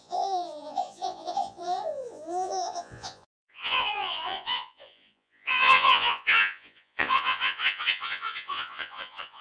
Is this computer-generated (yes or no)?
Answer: yes